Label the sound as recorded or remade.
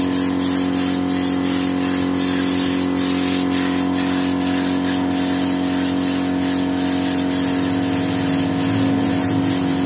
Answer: recorded